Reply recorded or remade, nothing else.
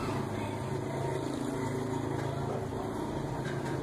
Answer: recorded